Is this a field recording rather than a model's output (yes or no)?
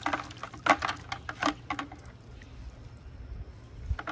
yes